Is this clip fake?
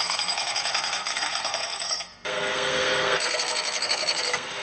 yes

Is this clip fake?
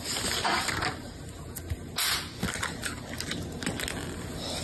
no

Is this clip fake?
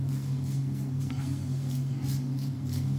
yes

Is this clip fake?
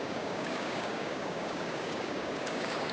yes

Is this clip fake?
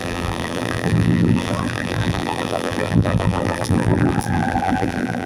yes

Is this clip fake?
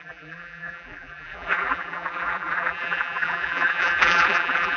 yes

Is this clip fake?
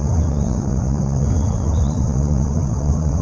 yes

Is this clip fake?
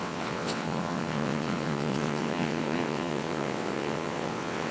yes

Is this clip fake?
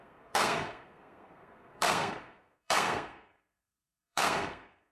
yes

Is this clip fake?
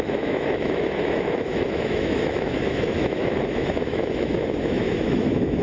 yes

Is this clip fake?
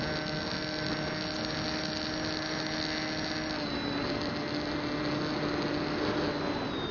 no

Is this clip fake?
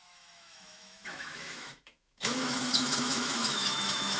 yes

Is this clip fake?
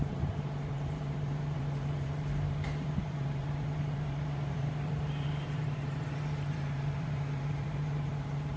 yes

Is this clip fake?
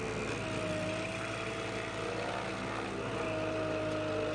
no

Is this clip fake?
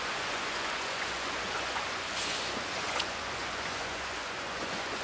yes